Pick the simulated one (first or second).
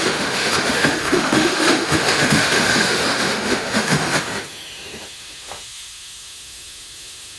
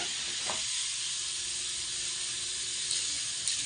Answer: first